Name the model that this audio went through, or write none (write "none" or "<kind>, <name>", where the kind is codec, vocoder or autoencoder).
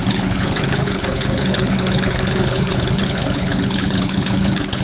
codec, HILCodec